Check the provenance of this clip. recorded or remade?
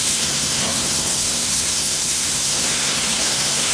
remade